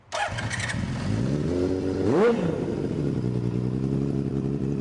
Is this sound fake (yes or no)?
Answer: no